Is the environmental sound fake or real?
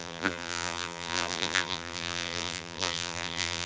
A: fake